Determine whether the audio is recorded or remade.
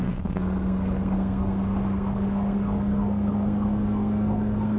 remade